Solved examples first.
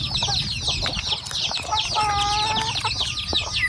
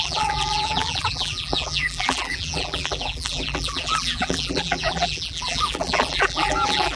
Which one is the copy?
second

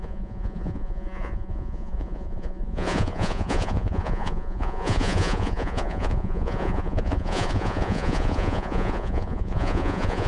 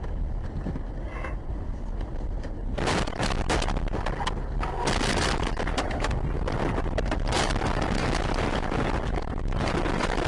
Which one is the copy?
first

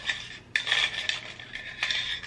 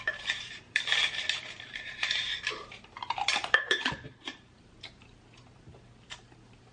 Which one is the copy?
second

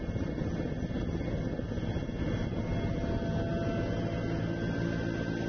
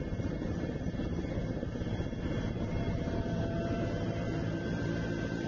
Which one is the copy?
second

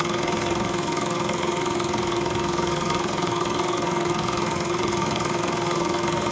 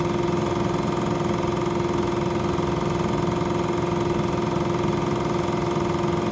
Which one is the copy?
first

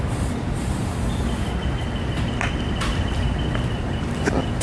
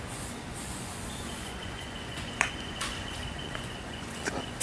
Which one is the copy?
second